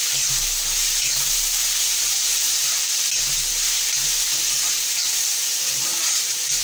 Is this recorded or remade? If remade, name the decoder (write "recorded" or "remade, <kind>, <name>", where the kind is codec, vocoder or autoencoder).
remade, vocoder, BigVGAN v2